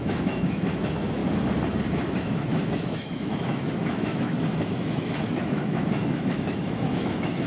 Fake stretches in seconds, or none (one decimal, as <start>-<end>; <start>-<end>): 0.0-1.2; 1.9-7.5